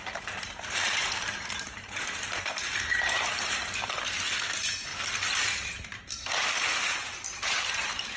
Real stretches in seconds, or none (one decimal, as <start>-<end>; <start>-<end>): none